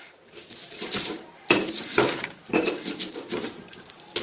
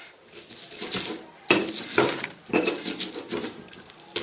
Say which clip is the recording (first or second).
second